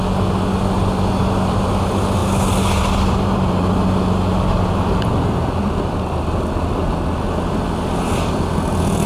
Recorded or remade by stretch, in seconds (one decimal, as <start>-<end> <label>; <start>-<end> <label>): 0.0-9.1 recorded